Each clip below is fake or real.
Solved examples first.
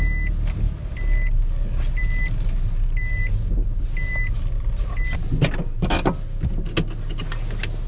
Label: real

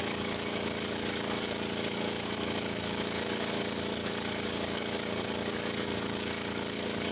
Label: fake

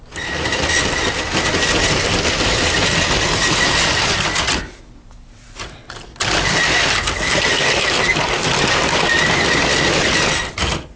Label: real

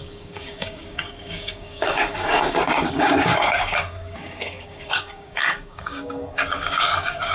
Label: fake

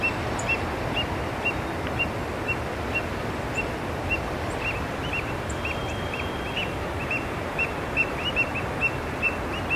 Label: real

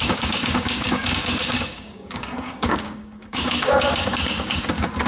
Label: fake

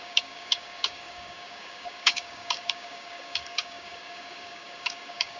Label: fake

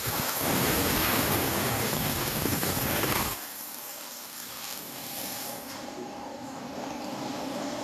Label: fake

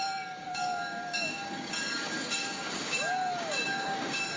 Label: fake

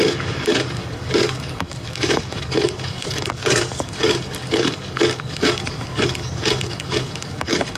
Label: fake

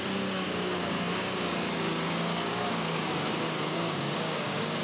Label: fake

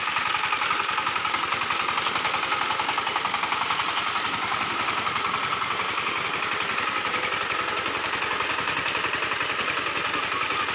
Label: real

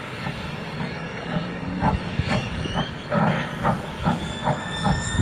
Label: fake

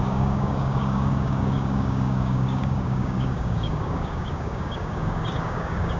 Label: fake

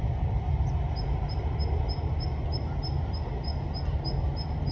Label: real